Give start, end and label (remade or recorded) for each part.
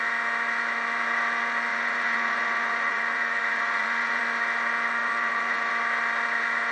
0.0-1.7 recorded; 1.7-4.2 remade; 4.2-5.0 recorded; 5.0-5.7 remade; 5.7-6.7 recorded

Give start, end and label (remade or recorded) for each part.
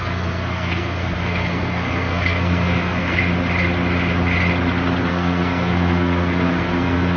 0.0-3.2 remade; 3.2-5.1 recorded; 5.1-7.2 remade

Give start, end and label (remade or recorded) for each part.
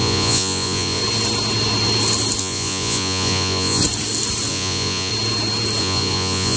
0.0-1.0 remade; 1.0-2.4 recorded; 2.4-3.8 remade; 3.8-4.5 recorded; 4.5-5.1 remade; 5.1-5.8 recorded; 5.8-6.6 remade